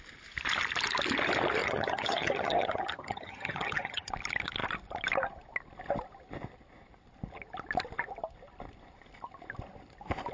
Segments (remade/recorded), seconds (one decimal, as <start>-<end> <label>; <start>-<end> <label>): 0.0-1.6 recorded; 1.6-4.1 remade; 4.1-10.3 recorded